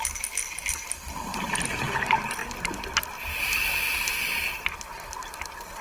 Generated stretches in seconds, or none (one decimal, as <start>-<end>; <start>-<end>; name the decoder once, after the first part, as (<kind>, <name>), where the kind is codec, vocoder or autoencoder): none